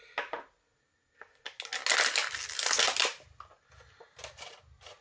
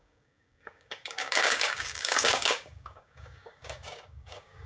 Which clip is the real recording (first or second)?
first